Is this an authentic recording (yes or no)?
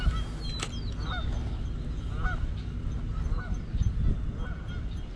yes